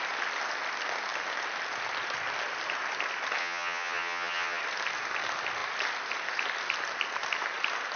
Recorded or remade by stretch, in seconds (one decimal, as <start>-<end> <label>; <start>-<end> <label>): 0.0-3.4 recorded; 3.4-4.6 remade; 4.6-8.0 recorded